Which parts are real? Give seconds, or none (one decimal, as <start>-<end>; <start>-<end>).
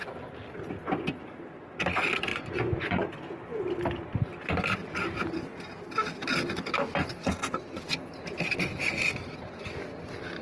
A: 0.0-2.3; 3.0-10.4